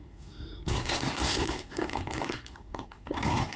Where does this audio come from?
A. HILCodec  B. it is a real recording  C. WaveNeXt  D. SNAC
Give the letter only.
D